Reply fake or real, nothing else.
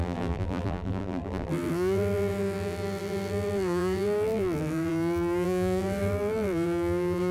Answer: fake